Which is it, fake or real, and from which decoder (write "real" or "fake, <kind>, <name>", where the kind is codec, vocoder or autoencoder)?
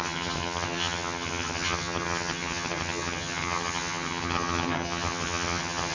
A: fake, vocoder, HiFi-GAN